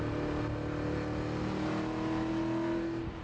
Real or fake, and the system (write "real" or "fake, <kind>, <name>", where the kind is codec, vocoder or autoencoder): real